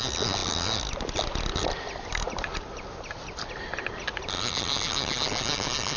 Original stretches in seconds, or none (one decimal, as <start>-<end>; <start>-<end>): 0.0-6.0